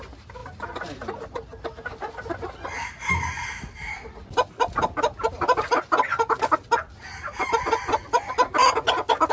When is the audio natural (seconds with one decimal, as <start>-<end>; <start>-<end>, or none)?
0.0-9.3